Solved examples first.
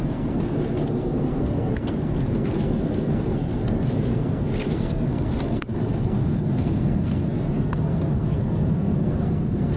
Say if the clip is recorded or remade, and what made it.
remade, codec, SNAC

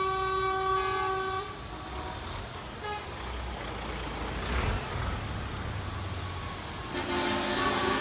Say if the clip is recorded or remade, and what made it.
recorded